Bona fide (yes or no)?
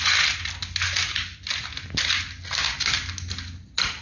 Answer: yes